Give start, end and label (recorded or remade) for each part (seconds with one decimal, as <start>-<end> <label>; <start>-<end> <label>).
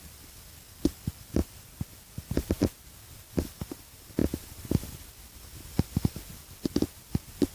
0.0-7.5 recorded